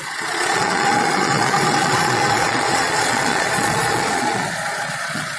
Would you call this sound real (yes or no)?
no